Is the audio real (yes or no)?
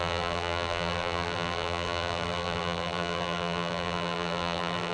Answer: no